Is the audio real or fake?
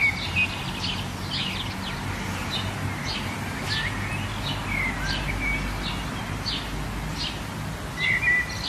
real